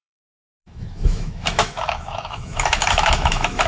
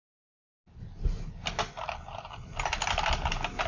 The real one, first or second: second